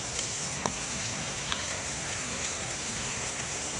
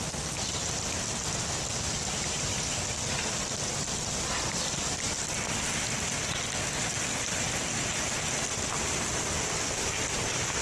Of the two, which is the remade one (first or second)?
first